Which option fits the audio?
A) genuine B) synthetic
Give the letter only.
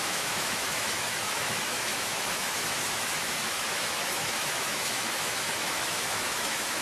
B